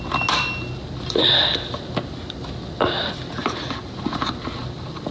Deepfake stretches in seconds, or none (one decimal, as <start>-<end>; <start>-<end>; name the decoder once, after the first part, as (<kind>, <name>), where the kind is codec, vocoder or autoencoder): none